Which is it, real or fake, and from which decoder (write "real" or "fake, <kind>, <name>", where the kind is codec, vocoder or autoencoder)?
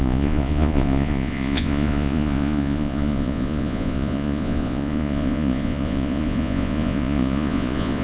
fake, vocoder, Vocos